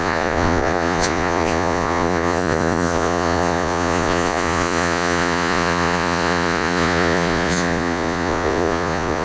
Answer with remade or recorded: remade